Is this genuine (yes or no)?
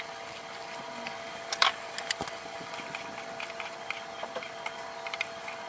yes